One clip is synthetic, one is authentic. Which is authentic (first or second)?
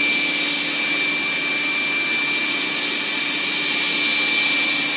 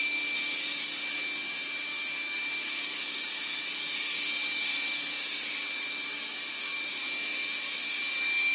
first